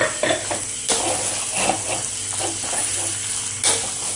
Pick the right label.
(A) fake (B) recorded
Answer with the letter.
B